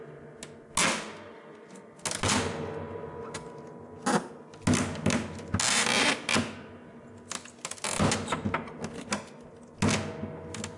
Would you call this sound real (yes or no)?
yes